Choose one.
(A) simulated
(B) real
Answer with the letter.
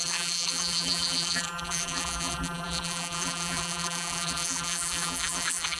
A